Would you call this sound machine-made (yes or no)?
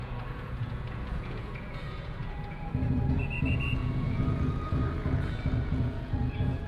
yes